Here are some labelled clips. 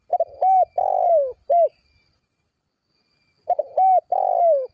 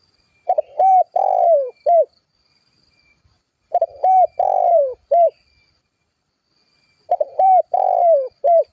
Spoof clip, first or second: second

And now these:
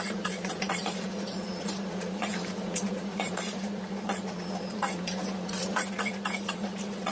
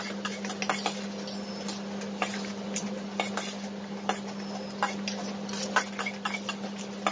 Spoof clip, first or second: first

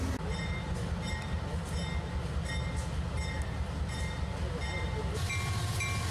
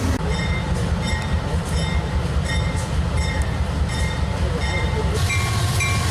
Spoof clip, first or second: second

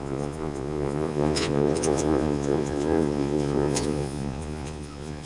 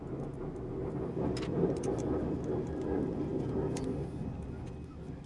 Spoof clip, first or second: first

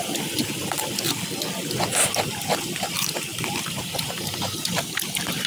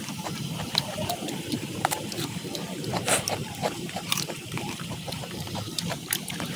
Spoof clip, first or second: second